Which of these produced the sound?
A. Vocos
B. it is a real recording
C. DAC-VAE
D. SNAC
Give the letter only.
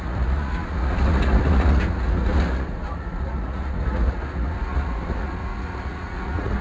A